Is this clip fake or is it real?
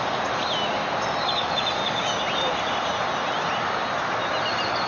real